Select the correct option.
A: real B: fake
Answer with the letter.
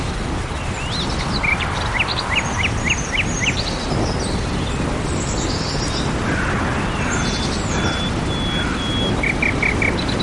A